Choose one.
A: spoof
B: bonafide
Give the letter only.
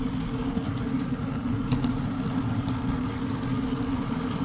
B